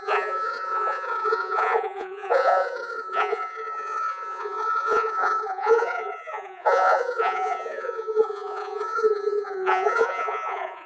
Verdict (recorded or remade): remade